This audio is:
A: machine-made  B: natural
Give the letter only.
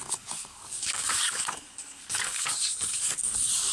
A